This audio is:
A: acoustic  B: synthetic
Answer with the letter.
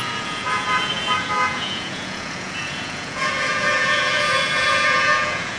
B